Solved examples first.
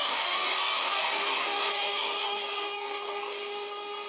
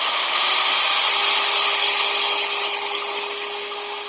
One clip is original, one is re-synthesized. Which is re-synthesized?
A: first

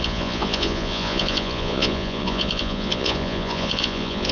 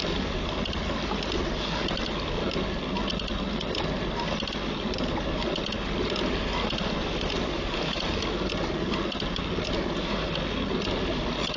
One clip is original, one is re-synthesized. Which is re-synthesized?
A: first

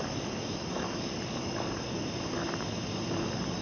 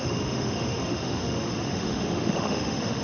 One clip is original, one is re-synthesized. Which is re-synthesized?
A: second